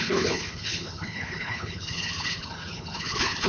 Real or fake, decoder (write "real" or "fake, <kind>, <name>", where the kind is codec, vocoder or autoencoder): fake, codec, HILCodec